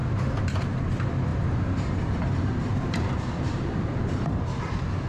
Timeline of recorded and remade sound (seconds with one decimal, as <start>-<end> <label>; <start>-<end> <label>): 0.0-0.9 remade; 0.9-1.3 recorded; 1.3-4.4 remade; 4.4-5.1 recorded